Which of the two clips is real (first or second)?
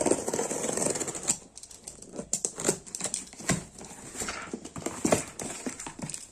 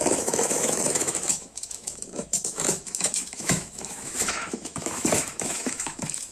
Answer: first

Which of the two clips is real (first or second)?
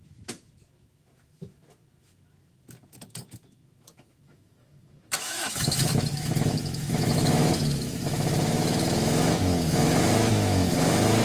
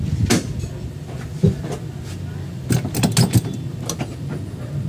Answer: second